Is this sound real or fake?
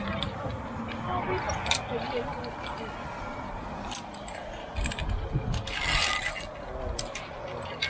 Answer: real